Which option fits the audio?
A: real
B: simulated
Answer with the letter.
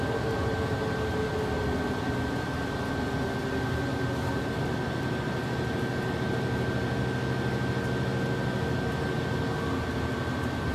A